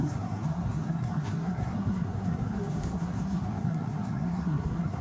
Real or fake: fake